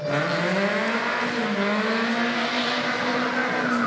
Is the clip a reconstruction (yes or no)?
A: no